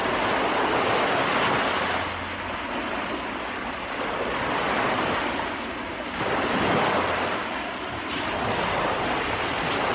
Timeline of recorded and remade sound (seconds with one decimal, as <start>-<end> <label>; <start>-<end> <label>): 0.0-9.9 recorded